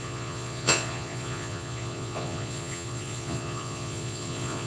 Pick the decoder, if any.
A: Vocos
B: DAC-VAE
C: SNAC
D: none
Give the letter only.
A